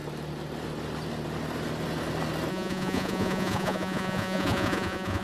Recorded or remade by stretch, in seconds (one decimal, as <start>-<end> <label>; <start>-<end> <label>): 0.0-2.5 recorded; 2.5-5.2 remade